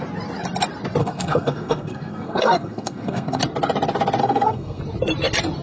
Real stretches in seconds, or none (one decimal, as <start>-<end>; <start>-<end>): 0.0-1.0; 3.4-4.2; 4.8-5.6